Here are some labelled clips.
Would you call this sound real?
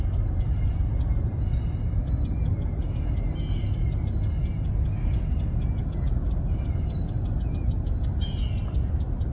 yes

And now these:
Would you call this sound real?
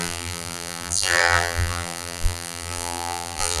no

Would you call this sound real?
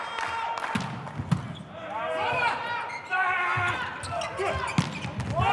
yes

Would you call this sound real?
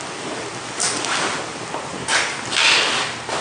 yes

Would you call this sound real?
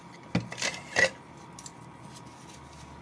yes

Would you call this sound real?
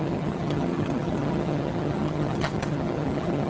no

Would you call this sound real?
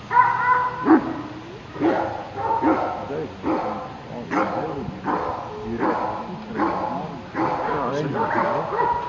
yes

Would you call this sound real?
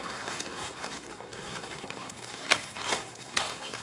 no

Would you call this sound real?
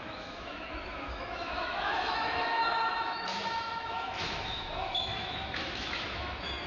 no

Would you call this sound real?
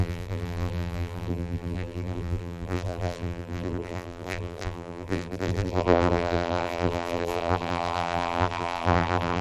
no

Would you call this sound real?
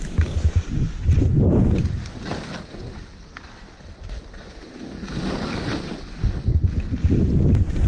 yes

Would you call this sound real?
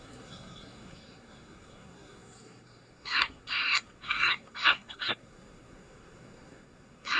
no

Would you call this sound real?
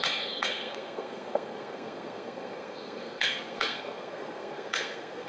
no